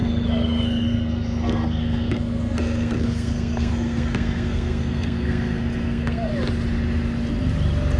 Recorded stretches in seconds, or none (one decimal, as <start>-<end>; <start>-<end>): 6.3-8.0